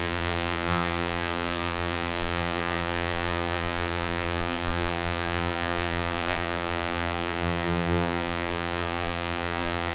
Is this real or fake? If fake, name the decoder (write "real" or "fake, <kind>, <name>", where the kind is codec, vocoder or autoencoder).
fake, vocoder, BigVGAN v2